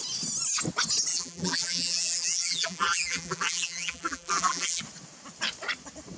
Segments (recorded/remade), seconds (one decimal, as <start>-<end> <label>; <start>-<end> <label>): 0.0-1.1 recorded; 1.1-4.8 remade; 4.8-6.2 recorded